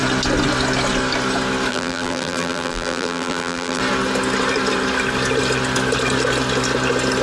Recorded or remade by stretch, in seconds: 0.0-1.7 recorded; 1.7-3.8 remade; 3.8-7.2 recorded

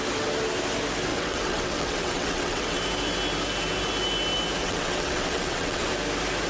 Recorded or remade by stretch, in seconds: 0.0-1.1 recorded; 1.1-2.8 remade; 2.8-4.6 recorded; 4.6-5.9 remade; 5.9-6.5 recorded

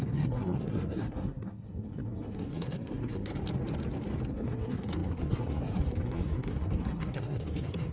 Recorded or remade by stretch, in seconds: 0.0-3.3 remade; 3.3-4.3 recorded; 4.3-7.9 remade

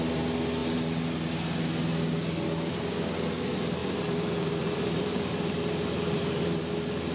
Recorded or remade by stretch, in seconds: 0.0-3.8 recorded; 3.8-6.6 remade; 6.6-7.1 recorded